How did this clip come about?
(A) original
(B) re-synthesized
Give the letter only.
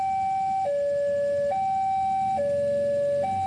A